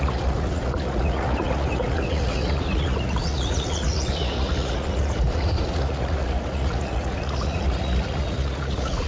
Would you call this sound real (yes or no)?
no